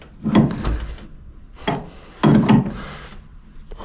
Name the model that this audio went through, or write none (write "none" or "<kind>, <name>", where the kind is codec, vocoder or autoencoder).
none